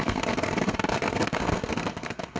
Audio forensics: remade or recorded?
remade